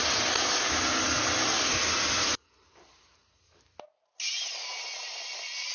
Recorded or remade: recorded